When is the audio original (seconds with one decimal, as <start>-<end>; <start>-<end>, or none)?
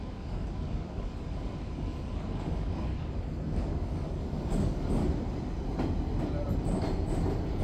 5.0-7.6